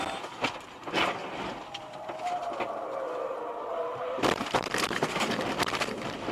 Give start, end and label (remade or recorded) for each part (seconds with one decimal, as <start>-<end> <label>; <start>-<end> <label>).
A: 0.0-3.7 recorded; 3.7-6.3 remade